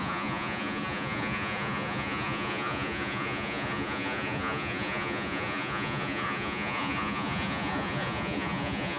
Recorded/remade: remade